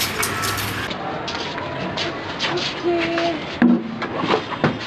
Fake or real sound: real